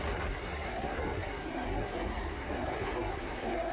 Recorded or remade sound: remade